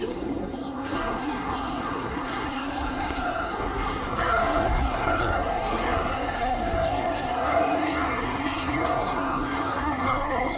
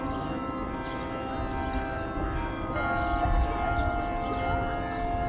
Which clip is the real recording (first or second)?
second